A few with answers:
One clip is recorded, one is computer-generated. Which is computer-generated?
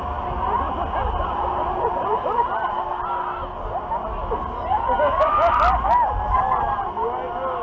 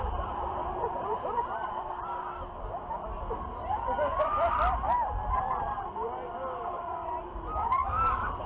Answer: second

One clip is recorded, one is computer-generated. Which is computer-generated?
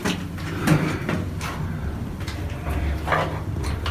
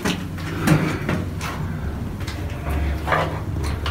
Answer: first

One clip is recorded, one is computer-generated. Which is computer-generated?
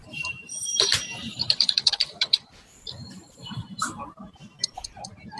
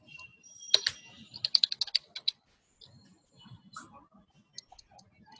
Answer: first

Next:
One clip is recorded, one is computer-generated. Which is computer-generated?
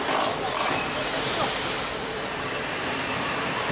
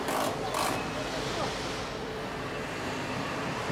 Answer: first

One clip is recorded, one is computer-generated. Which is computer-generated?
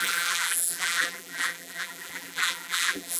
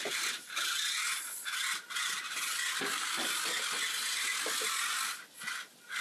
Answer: first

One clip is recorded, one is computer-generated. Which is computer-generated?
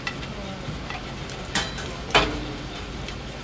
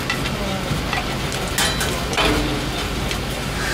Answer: first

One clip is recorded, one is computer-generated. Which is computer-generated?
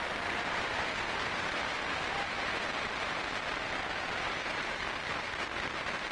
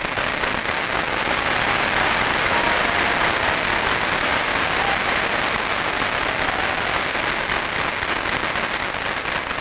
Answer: first